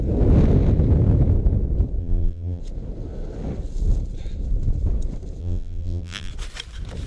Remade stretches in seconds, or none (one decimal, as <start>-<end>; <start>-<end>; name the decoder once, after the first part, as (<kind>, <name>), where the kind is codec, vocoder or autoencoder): 2.0-2.6 (vocoder, BigVGAN v2); 5.4-6.3

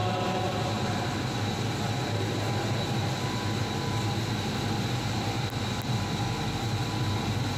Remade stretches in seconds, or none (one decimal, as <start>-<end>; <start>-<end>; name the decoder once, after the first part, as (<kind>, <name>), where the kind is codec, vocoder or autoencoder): none

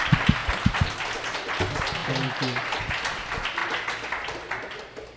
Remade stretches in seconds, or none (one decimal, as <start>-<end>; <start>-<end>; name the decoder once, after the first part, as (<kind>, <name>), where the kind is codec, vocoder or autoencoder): 0.0-2.0 (vocoder, BigVGAN v2); 2.8-3.6; 4.5-5.2

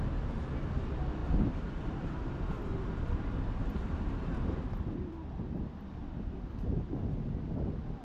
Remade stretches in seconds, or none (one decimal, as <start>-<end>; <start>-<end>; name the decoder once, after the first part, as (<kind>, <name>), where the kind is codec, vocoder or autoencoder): 1.2-5.1 (vocoder, BigVGAN v2); 6.0-7.0